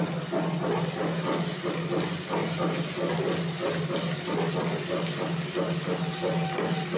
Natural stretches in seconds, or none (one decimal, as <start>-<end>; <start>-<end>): 0.0-7.0